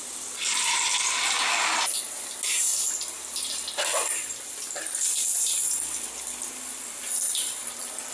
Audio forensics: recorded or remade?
remade